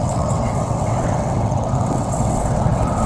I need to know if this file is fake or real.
fake